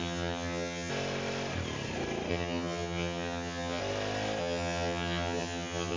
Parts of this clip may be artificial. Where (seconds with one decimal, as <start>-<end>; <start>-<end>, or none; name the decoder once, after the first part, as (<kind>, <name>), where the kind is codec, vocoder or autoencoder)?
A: 0.0-0.9 (vocoder, HiFi-GAN); 2.3-3.8; 4.4-6.0